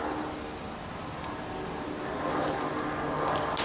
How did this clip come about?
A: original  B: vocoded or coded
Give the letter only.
A